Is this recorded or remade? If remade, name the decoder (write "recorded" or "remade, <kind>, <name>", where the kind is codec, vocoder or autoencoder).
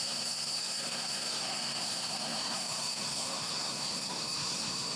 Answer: remade, codec, SNAC